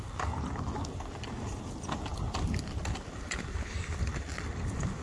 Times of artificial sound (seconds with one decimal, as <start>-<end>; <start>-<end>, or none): none